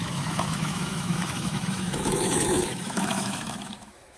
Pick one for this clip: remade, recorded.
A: remade